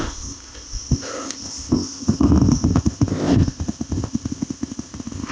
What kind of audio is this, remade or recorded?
remade